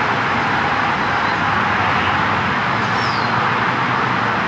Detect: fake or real real